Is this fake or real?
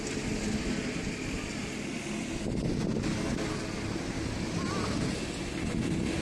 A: real